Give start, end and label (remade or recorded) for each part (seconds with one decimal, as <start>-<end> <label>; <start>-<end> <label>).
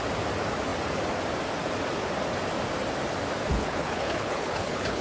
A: 0.0-3.5 recorded; 3.5-5.0 remade